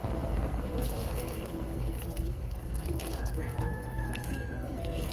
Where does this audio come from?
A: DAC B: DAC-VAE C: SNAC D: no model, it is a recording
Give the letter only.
C